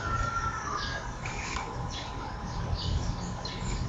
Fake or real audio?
fake